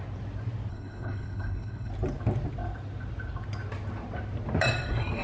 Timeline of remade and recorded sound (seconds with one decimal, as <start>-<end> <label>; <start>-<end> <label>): 0.0-0.7 recorded; 0.7-1.9 remade; 1.9-5.2 recorded